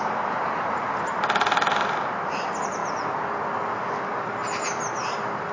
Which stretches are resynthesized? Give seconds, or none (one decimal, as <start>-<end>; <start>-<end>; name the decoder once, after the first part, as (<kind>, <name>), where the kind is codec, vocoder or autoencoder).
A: none